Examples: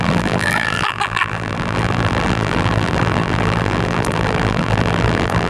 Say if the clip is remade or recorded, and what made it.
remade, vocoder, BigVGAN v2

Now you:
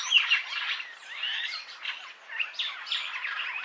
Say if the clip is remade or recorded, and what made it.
recorded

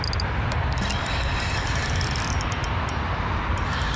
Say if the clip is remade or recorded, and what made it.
recorded